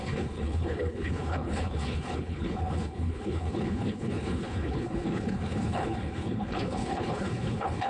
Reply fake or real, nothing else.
fake